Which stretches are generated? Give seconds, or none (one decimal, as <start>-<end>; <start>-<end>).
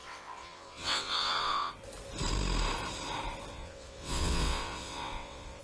0.0-1.7; 3.5-5.6